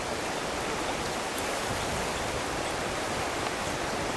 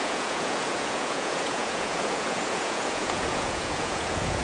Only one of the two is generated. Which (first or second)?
second